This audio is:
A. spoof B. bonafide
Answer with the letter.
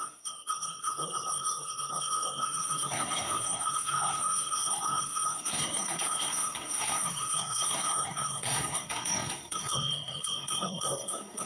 A